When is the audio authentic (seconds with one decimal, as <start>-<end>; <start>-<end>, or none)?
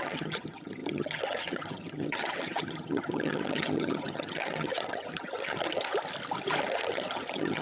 5.9-6.6